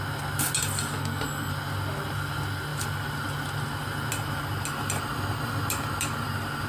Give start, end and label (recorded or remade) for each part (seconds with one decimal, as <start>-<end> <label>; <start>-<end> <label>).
0.0-1.0 recorded; 1.0-1.5 remade; 1.5-6.7 recorded